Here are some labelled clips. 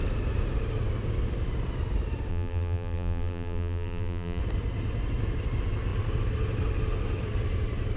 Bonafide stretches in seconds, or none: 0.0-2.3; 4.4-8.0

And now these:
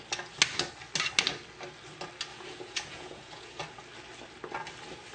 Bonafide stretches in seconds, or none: 0.0-2.3; 3.6-5.1

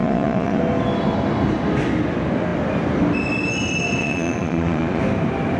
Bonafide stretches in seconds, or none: 0.6-4.0; 5.0-5.6

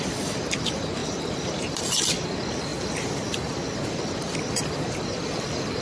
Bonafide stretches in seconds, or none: 0.0-1.0; 1.8-5.8

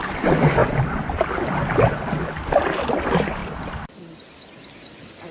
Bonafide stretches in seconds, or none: 0.0-0.6; 1.9-5.3

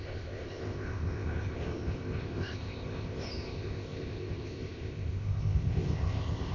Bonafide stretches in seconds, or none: none

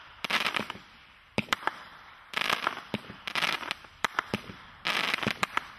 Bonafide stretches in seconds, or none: 1.9-2.9